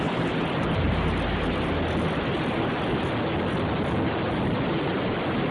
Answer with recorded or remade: recorded